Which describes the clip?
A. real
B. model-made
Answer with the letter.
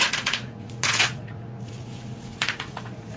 B